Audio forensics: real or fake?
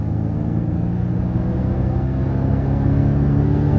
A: fake